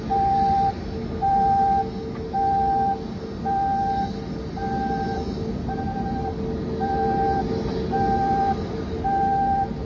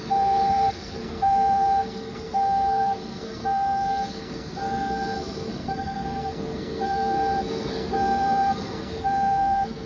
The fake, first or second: second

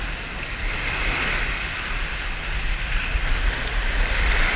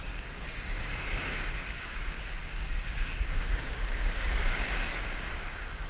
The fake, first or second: second